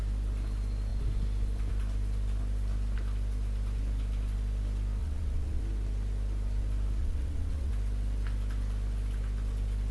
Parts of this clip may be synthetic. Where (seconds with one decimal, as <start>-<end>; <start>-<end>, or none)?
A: 5.0-5.6; 7.0-7.7